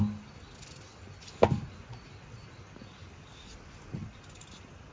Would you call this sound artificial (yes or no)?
no